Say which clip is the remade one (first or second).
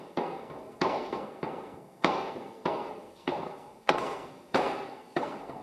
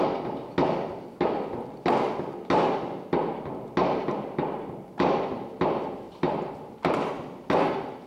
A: first